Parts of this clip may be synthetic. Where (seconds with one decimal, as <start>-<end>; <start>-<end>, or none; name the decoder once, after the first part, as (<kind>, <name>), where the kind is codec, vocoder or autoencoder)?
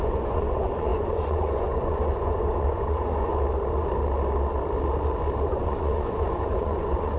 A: 0.0-3.3 (vocoder, Vocos); 5.5-7.2